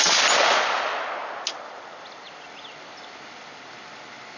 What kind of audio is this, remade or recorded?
recorded